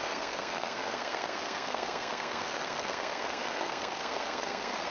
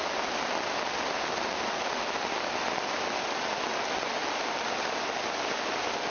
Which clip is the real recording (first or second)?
second